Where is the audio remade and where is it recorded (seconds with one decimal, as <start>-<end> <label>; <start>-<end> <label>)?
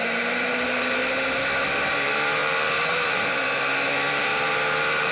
0.0-1.0 remade; 1.0-1.8 recorded; 1.8-5.1 remade